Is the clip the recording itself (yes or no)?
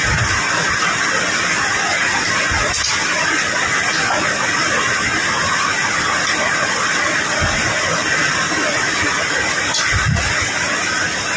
yes